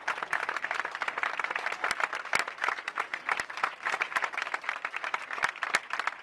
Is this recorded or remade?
recorded